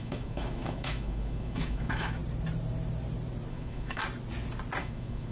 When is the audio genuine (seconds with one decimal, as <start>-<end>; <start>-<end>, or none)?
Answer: 2.2-3.5; 4.0-4.8